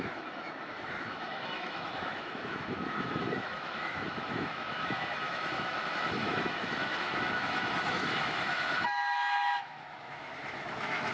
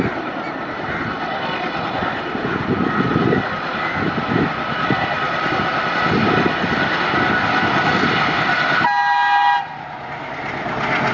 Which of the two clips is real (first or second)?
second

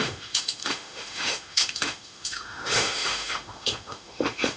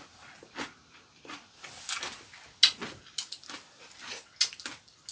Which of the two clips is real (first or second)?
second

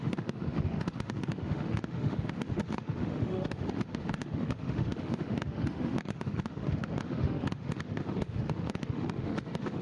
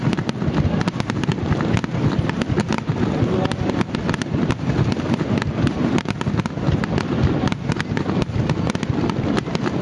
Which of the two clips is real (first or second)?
second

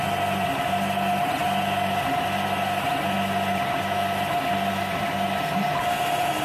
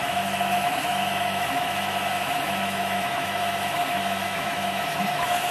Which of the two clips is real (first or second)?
first